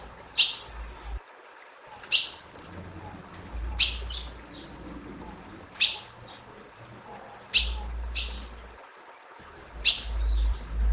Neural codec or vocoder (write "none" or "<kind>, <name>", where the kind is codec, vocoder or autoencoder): none